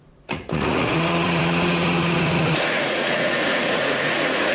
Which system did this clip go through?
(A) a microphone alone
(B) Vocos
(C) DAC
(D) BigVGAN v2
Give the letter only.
B